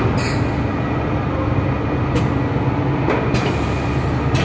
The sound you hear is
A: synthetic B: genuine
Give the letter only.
B